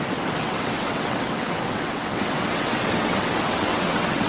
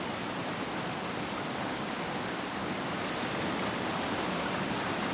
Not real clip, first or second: first